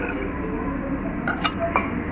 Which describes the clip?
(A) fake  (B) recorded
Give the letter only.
B